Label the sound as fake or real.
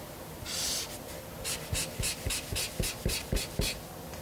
real